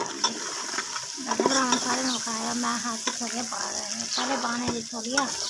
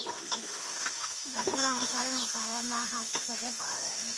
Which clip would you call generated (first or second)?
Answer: second